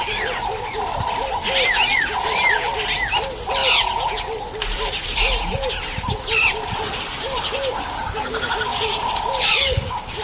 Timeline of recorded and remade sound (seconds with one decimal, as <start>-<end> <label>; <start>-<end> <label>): 0.0-8.0 recorded; 8.0-10.2 remade

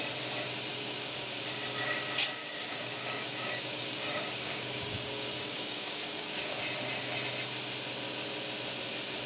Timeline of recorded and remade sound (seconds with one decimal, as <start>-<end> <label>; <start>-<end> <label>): 0.0-0.7 recorded; 0.7-1.4 remade; 1.4-2.4 recorded; 2.4-6.6 remade; 6.6-9.3 recorded

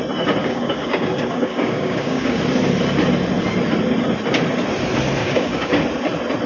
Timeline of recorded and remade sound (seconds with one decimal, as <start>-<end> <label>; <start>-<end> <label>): 0.0-0.4 recorded; 0.4-2.4 remade; 2.4-5.2 recorded; 5.2-5.8 remade; 5.8-6.5 recorded

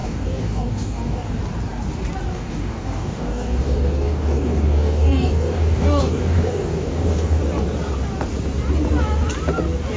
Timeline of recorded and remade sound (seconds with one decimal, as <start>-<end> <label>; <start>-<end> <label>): 0.0-1.4 remade; 1.4-2.3 recorded; 2.3-7.4 remade; 7.4-10.0 recorded